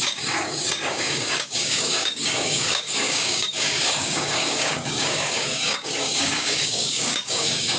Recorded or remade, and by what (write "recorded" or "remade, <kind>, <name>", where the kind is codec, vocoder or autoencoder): remade, codec, DAC